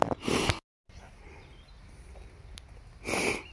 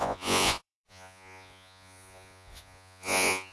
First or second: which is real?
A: first